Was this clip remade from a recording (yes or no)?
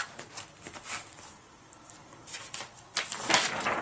no